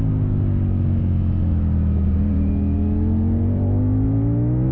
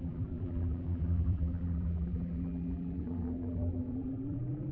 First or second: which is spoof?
second